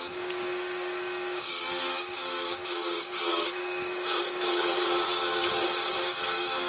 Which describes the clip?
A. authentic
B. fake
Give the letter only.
B